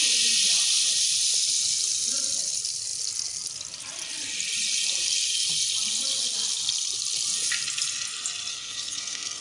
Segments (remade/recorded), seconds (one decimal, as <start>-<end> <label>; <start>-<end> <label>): 0.0-8.5 recorded; 8.5-9.4 remade